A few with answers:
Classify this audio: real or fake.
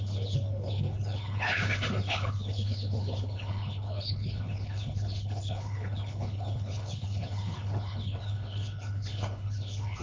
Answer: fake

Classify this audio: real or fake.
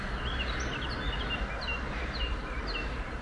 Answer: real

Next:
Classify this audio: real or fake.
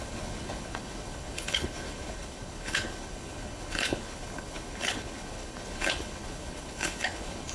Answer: fake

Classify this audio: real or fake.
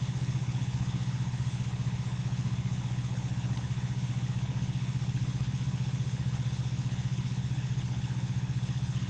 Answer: fake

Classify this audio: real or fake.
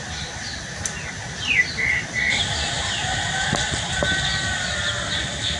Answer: real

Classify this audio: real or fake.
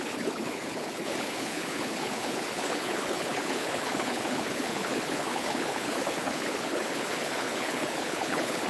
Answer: fake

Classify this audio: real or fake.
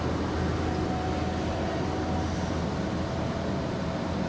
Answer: real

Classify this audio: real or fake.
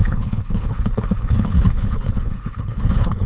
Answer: fake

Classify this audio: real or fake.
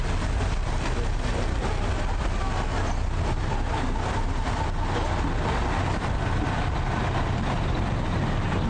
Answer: real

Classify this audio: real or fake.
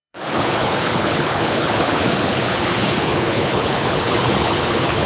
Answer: fake